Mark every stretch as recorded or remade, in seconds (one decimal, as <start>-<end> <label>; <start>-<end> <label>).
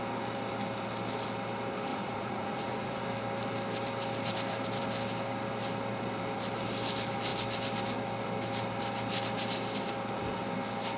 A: 0.0-1.9 recorded; 1.9-3.0 remade; 3.0-11.0 recorded